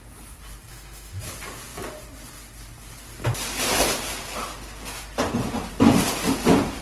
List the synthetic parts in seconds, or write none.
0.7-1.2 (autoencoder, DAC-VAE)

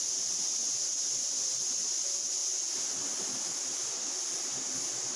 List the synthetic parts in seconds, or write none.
none

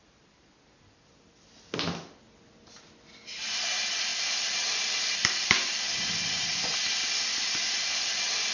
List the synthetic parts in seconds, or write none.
none